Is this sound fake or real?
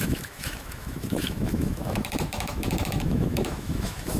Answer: fake